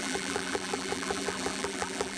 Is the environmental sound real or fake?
fake